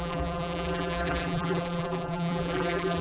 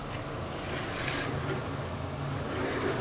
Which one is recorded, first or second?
second